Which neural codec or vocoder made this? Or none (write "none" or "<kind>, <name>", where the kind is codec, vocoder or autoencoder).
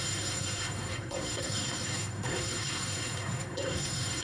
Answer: codec, SNAC